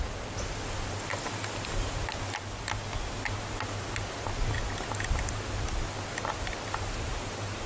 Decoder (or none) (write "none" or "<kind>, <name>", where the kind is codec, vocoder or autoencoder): none